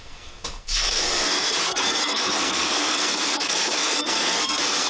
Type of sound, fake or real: fake